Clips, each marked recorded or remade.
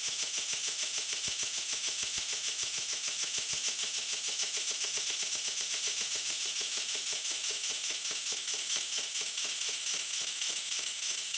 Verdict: remade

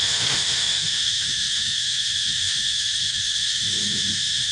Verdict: remade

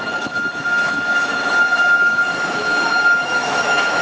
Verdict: remade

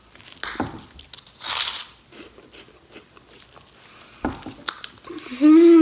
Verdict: recorded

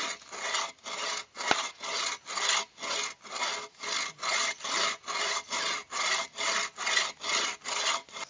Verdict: recorded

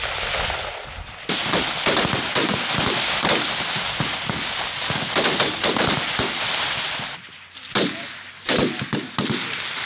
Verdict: recorded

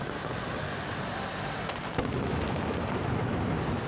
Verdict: recorded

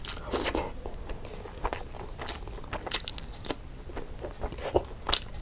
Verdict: recorded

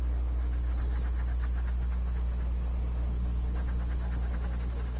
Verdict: recorded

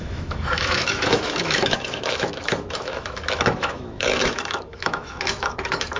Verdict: remade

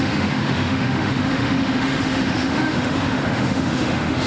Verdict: remade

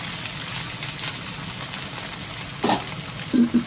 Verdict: recorded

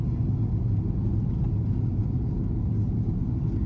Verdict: recorded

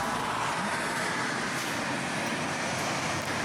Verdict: recorded